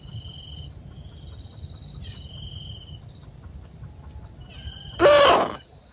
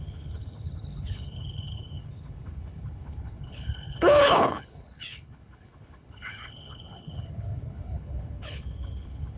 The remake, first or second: second